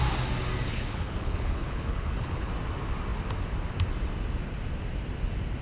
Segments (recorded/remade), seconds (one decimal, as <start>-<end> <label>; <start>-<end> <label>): 0.0-0.7 recorded; 0.7-2.5 remade; 2.5-5.6 recorded